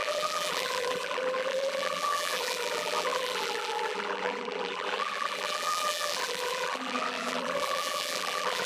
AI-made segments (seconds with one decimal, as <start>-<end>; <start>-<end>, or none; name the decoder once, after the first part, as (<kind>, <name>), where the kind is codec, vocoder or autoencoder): 0.0-8.7 (vocoder, BigVGAN v2)